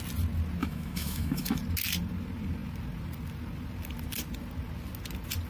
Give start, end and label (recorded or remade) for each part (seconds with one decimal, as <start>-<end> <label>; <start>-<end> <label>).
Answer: 0.0-0.6 recorded; 0.6-1.6 remade; 1.6-5.5 recorded